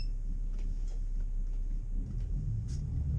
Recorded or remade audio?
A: recorded